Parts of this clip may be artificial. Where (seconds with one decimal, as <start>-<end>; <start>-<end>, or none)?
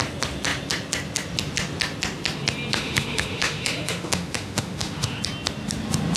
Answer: 2.7-5.2